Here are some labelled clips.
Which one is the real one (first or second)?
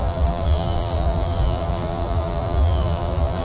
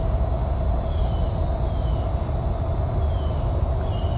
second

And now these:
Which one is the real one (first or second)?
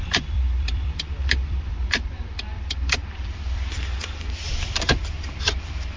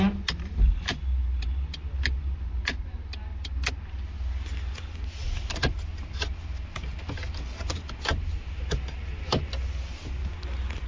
second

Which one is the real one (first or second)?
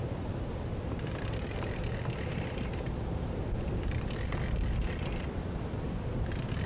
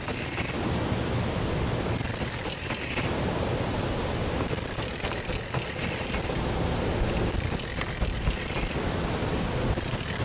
second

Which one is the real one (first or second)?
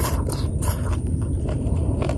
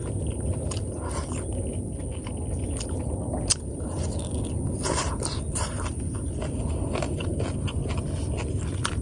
second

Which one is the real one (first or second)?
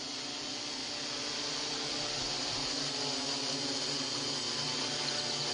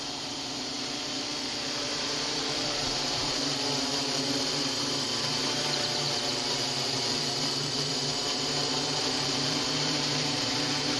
first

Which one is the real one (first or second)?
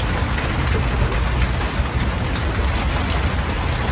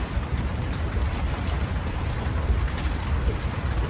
first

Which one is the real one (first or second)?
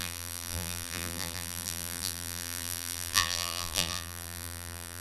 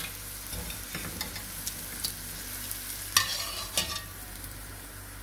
second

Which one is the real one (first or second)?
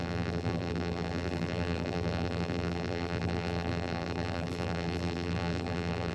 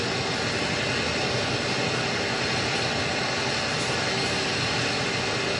second